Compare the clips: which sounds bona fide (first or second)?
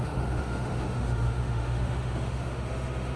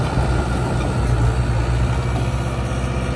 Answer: second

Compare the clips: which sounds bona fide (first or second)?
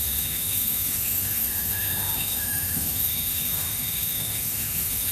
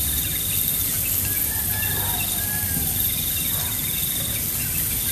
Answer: second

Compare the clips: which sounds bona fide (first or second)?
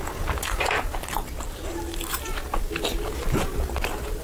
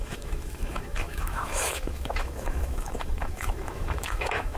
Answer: first